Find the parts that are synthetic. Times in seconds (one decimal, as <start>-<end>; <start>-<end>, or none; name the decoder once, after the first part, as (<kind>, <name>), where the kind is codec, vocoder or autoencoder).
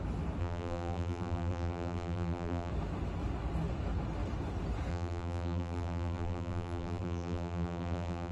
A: 0.4-2.7 (vocoder, BigVGAN v2); 4.9-8.3